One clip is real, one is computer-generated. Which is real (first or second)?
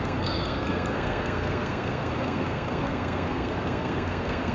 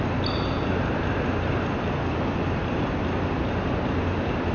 second